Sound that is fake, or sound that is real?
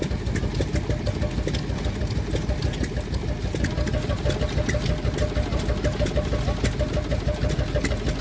real